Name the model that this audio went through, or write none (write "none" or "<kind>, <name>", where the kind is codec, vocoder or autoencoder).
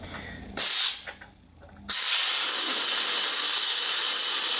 none